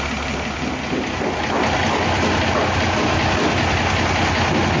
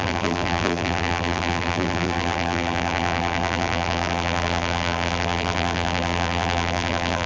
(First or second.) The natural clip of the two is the first